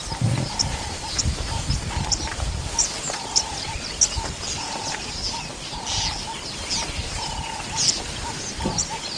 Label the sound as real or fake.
real